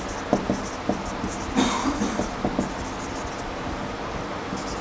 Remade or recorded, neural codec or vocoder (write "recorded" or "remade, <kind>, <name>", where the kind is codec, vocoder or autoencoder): recorded